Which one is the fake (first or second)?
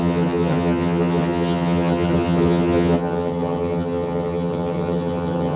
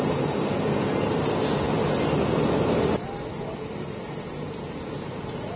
first